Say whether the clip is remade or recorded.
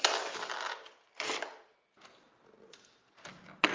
recorded